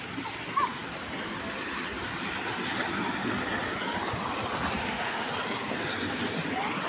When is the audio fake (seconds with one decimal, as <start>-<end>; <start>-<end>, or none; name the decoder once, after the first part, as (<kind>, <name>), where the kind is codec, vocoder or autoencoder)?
4.8-5.3 (autoencoder, DAC-VAE)